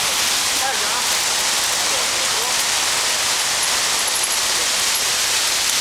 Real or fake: real